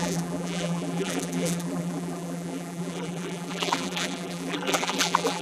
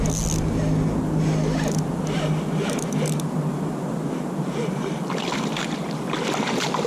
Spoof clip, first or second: first